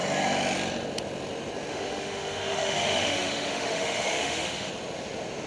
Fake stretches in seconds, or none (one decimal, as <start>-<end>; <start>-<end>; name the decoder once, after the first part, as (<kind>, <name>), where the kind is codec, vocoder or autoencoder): 1.7-4.7 (autoencoder, DAC-VAE)